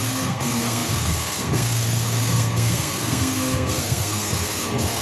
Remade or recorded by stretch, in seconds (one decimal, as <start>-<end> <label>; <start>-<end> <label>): 0.0-5.0 remade